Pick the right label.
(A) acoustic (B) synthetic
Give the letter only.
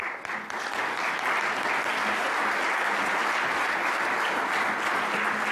A